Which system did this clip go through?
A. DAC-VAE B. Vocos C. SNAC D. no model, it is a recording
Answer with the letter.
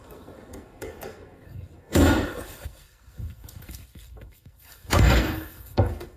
C